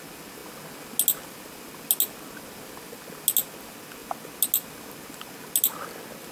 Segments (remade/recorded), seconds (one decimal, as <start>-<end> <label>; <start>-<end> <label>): 0.0-6.3 recorded